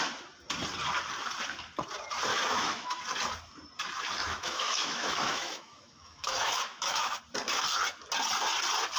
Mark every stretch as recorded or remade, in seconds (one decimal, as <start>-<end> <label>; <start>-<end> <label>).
0.0-2.3 recorded; 2.3-3.0 remade; 3.0-4.2 recorded; 4.2-7.2 remade; 7.2-9.0 recorded